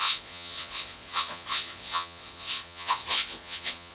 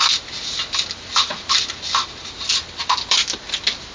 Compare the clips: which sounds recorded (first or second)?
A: second